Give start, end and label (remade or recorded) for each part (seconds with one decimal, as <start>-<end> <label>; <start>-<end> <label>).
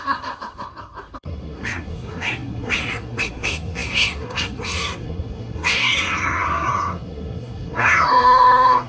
0.0-8.9 remade